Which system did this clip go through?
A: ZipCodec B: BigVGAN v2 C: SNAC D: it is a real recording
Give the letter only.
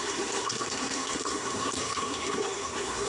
C